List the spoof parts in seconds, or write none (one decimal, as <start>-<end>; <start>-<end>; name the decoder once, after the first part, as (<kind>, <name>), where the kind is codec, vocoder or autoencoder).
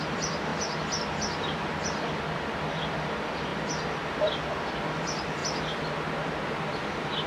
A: 0.0-0.5 (vocoder, BigVGAN v2); 1.0-5.4